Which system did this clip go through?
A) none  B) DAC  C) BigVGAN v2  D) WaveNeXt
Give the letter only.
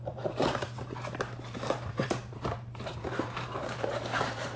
C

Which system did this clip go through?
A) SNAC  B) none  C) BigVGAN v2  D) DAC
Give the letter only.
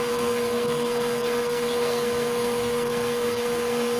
A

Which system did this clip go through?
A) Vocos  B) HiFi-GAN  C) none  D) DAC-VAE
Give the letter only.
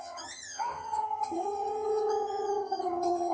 B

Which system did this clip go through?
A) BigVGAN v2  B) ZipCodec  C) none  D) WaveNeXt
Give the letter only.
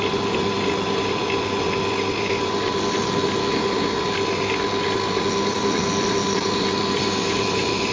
C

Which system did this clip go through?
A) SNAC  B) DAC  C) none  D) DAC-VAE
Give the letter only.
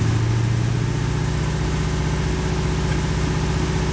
C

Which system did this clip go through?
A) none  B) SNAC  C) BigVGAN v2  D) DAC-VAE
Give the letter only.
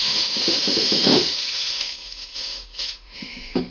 D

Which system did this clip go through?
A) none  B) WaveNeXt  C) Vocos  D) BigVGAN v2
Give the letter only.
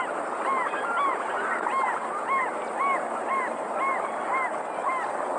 A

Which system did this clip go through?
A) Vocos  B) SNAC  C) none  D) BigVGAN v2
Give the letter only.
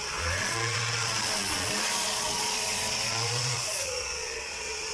A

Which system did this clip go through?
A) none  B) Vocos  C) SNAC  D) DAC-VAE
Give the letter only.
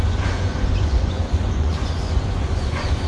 B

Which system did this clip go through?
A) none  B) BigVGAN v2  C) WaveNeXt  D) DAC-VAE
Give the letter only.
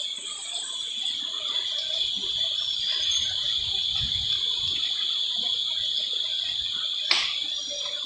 A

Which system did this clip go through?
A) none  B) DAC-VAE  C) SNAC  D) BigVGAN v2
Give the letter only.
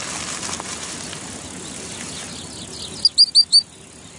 A